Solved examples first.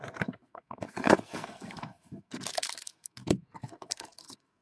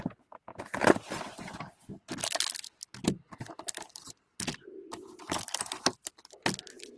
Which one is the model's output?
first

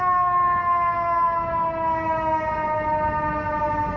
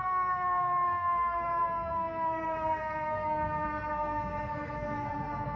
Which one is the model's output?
second